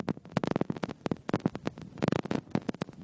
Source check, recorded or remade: recorded